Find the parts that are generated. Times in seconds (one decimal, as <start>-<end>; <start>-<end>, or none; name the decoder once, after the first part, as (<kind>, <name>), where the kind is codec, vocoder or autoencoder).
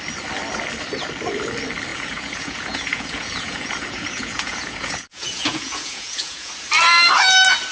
1.9-6.5 (vocoder, Vocos)